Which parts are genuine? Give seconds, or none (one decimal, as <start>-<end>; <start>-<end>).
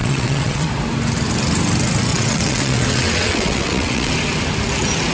0.7-2.1; 4.1-5.1